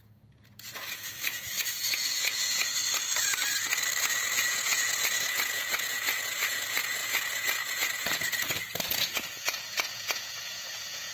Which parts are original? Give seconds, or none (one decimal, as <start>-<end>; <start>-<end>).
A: 2.8-4.0